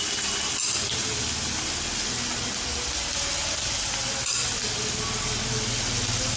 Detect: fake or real real